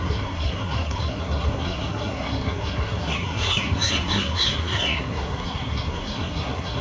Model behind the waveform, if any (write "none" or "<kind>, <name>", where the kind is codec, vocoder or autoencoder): codec, SNAC